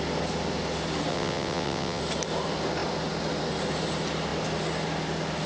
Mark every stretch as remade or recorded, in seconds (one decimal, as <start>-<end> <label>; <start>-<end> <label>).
0.0-1.1 recorded; 1.1-2.0 remade; 2.0-5.5 recorded